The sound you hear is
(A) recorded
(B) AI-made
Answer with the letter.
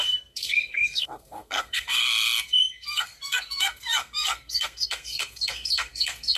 B